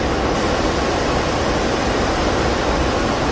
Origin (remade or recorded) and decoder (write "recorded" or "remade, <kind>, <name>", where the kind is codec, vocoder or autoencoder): recorded